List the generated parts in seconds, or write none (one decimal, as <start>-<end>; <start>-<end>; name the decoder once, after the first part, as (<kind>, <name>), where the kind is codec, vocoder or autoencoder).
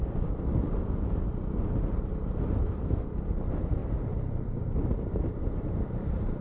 3.8-6.4 (vocoder, BigVGAN v2)